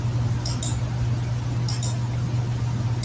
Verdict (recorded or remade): recorded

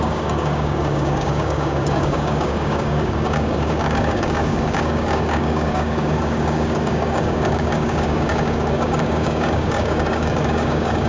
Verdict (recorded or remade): remade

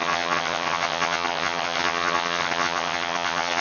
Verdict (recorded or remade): remade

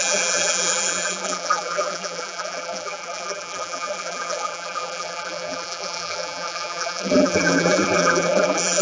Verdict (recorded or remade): remade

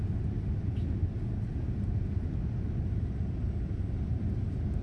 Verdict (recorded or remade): recorded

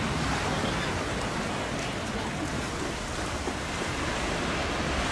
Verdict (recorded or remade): recorded